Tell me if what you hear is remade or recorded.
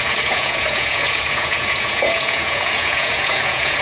remade